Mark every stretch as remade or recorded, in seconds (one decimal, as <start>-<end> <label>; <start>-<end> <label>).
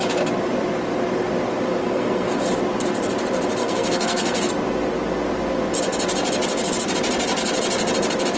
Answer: 0.0-1.8 recorded; 1.8-2.4 remade; 2.4-3.6 recorded; 3.6-4.5 remade; 4.5-8.4 recorded